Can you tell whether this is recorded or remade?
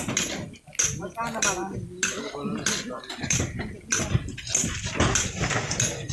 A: recorded